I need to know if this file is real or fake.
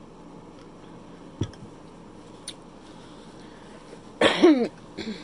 real